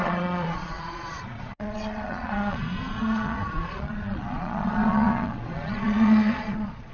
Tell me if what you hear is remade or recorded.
remade